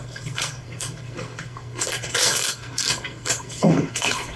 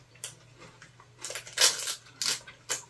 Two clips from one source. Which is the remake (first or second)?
first